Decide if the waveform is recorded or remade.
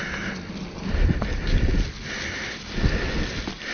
recorded